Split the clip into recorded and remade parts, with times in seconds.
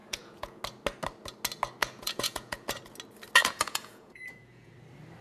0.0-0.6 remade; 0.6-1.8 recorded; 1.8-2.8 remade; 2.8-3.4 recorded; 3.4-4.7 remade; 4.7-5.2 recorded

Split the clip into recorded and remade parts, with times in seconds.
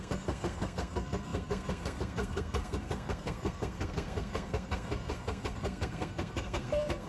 0.0-7.1 remade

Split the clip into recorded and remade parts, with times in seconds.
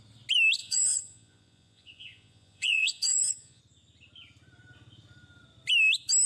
0.0-0.6 recorded; 0.6-3.6 remade; 3.6-6.3 recorded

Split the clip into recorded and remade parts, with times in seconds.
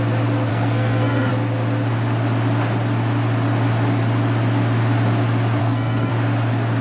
0.0-0.5 recorded; 0.5-1.3 remade; 1.3-5.6 recorded; 5.6-6.1 remade; 6.1-6.8 recorded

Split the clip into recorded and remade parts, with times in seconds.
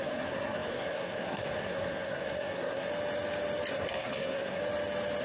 0.0-2.9 remade; 2.9-3.7 recorded; 3.7-4.6 remade; 4.6-5.2 recorded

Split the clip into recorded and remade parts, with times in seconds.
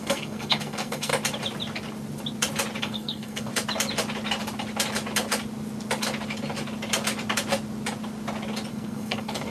0.0-1.1 remade; 1.1-2.8 recorded; 2.8-3.5 remade; 3.5-8.7 recorded; 8.7-9.5 remade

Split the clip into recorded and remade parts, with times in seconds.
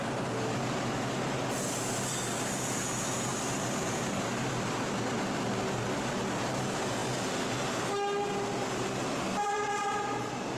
0.0-3.3 recorded; 3.3-4.2 remade; 4.2-10.6 recorded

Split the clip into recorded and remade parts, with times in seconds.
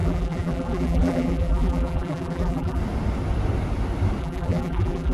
0.0-2.8 remade; 2.8-4.2 recorded; 4.2-5.1 remade